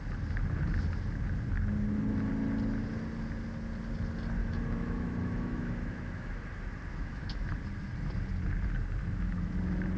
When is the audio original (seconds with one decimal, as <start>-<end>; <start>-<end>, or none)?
0.0-4.4; 6.3-6.9; 7.5-9.0; 9.5-10.0